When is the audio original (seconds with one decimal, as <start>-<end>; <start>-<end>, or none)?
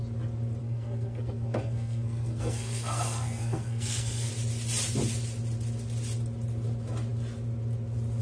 0.0-0.6; 4.3-8.2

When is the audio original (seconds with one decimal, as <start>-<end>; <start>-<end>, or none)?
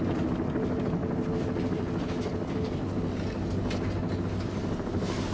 0.0-5.3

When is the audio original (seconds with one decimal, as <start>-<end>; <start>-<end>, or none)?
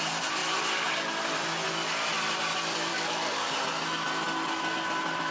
0.0-2.9; 3.5-5.3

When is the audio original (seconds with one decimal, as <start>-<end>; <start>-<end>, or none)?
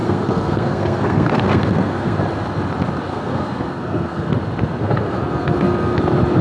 2.2-3.1; 4.3-4.8; 6.0-6.4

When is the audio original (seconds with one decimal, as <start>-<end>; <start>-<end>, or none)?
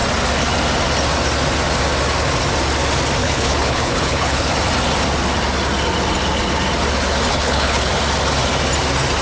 0.0-3.2; 4.5-7.3; 7.9-9.2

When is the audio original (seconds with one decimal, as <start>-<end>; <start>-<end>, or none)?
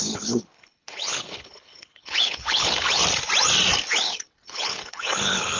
3.0-3.9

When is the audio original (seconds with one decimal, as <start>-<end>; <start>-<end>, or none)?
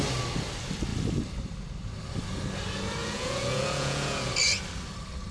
0.0-3.0; 4.3-5.3